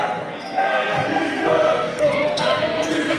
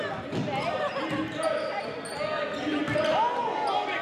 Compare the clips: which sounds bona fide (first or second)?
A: second